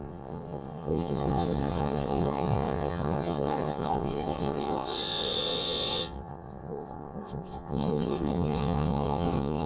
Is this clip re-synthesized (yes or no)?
yes